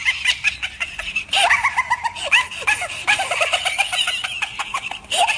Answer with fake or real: real